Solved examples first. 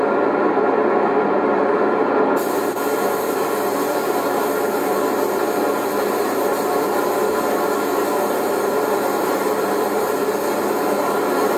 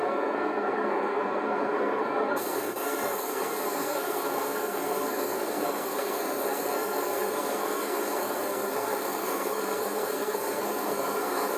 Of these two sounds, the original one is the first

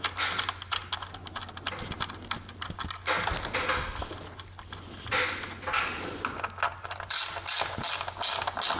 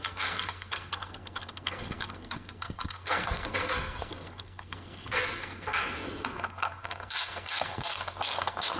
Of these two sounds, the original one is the first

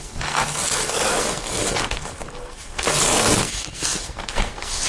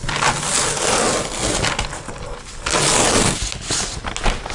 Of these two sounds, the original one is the second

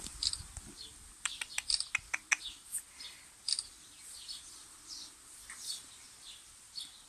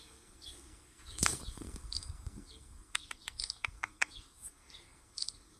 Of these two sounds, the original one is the first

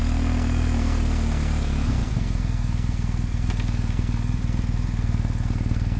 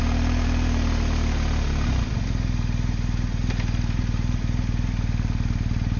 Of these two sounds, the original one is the second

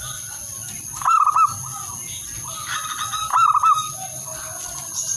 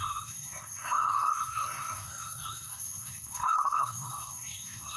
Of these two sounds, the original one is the first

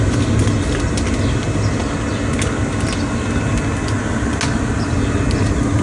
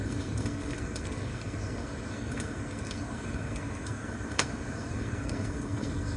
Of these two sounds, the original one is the first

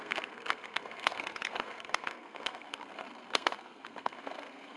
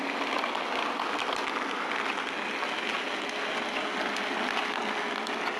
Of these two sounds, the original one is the second